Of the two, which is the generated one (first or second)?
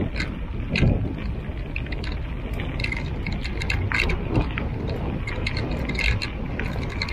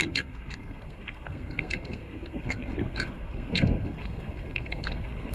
second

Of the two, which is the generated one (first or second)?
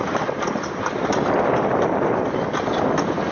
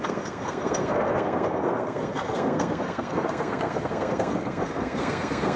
second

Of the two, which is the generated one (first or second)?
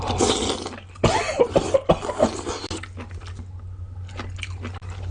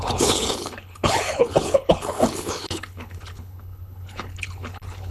second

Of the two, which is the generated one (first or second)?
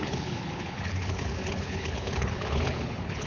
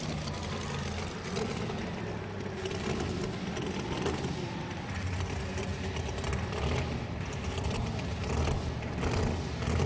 first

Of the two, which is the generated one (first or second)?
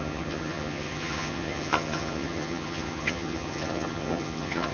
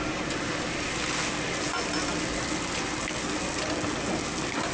first